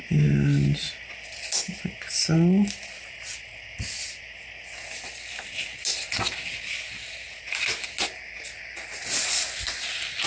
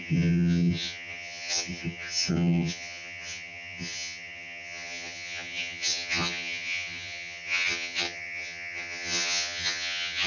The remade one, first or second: second